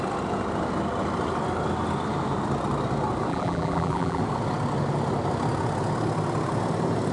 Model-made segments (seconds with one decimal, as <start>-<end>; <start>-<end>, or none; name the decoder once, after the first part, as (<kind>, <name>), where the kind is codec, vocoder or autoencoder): 3.3-4.2 (vocoder, BigVGAN v2)